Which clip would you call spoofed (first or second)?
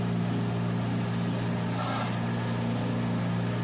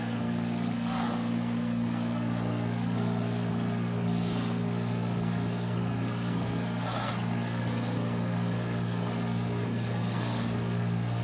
second